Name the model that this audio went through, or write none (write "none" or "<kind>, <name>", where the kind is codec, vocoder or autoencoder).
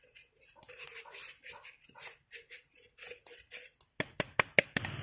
none